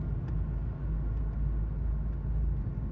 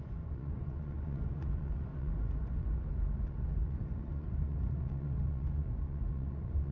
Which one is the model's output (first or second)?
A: second